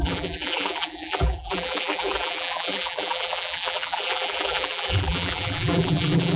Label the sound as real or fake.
fake